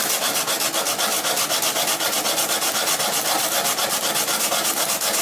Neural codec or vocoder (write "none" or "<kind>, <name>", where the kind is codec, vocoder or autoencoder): none